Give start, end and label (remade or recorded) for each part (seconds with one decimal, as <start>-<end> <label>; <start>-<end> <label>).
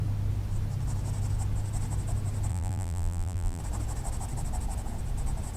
0.0-2.5 recorded; 2.5-3.6 remade; 3.6-5.6 recorded